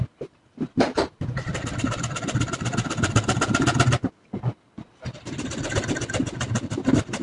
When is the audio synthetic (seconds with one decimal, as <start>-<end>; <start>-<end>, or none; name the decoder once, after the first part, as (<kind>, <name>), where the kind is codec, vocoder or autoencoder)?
none